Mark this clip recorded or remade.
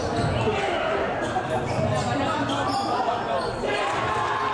recorded